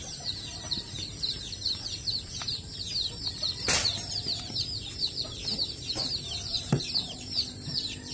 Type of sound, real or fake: fake